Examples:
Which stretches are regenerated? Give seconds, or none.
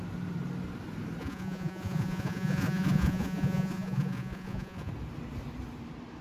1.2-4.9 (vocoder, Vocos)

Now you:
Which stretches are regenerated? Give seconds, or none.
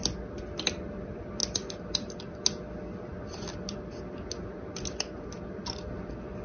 none